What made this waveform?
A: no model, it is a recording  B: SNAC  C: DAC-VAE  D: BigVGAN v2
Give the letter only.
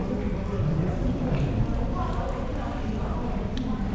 A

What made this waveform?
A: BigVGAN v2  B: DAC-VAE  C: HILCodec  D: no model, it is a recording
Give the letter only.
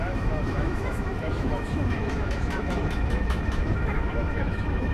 B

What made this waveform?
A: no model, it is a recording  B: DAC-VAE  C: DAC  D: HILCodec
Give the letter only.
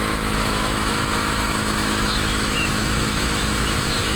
B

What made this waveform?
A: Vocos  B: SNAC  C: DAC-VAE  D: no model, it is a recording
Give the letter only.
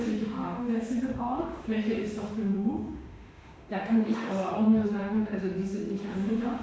C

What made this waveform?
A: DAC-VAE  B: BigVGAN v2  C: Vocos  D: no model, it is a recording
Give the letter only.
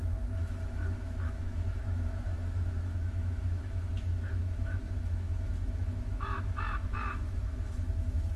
A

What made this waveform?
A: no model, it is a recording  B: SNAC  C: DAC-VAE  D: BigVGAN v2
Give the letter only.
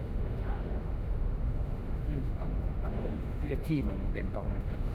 C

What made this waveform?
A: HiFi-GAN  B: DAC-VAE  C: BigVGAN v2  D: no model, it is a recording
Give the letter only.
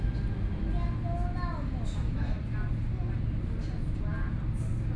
D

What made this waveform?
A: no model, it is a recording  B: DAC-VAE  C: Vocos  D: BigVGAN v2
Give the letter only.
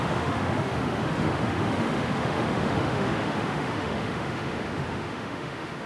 B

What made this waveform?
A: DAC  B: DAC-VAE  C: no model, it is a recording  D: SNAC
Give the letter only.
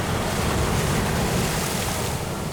C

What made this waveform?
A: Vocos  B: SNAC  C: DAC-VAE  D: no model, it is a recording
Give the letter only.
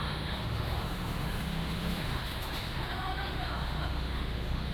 C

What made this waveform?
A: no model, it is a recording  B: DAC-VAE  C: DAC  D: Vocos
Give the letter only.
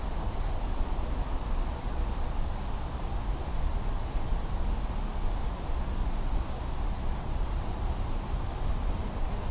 A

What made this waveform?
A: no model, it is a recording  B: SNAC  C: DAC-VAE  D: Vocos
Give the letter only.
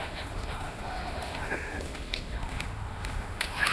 C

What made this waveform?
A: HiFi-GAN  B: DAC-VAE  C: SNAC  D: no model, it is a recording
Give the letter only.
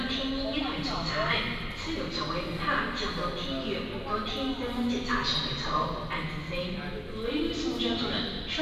D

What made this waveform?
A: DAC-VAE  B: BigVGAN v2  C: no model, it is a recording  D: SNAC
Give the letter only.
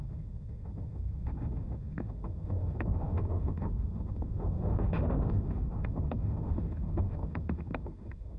A